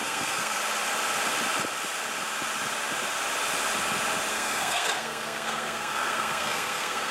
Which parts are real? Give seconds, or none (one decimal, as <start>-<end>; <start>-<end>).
0.6-4.3